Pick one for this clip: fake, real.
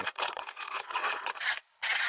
fake